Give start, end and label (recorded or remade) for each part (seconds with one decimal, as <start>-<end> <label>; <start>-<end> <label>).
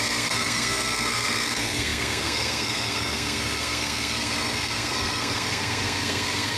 0.0-6.6 remade